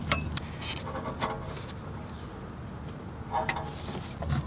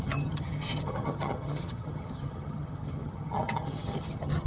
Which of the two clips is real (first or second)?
first